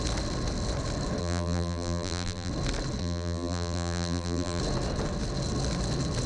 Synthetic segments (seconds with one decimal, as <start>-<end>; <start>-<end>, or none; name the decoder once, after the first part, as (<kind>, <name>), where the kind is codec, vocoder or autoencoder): 1.2-2.5 (vocoder, BigVGAN v2); 3.0-4.6